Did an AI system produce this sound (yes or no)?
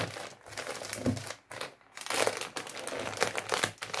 no